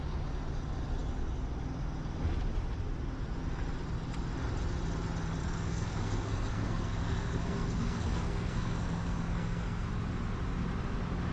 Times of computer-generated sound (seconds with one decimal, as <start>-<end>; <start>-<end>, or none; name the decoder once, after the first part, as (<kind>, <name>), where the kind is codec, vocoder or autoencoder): 5.4-9.9 (codec, SNAC)